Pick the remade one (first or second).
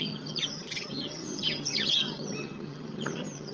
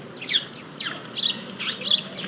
first